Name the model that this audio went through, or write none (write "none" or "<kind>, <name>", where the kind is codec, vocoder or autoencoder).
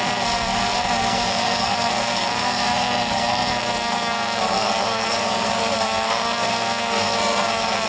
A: codec, SNAC